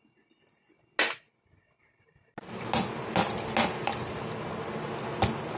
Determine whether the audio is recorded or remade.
recorded